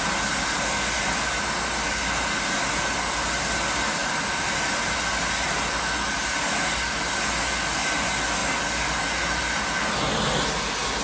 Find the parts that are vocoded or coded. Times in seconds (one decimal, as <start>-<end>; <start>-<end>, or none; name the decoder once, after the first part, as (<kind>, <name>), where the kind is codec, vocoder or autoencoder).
4.0-4.6 (vocoder, BigVGAN v2)